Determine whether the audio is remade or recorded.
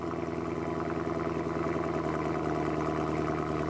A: recorded